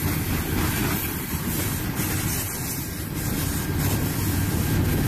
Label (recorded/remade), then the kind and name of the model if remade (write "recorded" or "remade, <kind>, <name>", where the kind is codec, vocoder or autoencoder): recorded